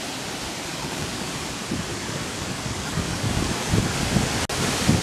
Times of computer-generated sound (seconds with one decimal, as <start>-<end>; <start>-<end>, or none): 0.7-1.3; 1.9-3.7